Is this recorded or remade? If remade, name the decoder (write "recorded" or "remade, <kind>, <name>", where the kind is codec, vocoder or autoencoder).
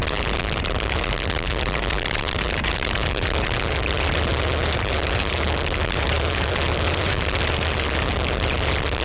remade, vocoder, BigVGAN v2